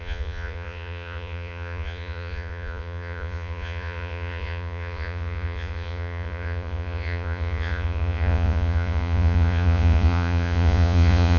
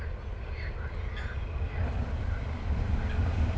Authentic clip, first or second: second